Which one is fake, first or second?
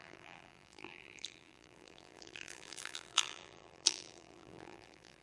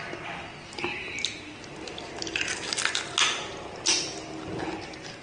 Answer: first